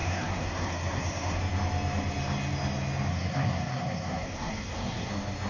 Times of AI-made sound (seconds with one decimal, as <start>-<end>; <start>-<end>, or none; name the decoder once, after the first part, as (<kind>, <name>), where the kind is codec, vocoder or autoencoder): 0.0-1.4 (codec, SNAC); 3.1-5.1